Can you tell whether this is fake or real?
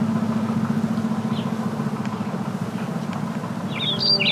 real